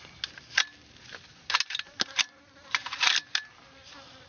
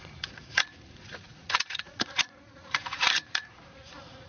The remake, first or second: second